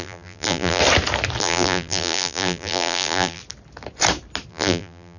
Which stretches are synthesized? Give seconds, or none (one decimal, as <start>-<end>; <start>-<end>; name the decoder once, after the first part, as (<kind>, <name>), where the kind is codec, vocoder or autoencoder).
0.0-0.8 (vocoder, BigVGAN v2); 1.4-3.4; 4.5-5.2